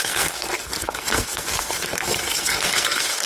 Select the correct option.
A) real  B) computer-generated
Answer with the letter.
B